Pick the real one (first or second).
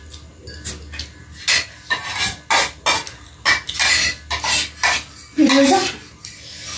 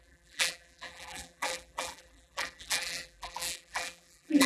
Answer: first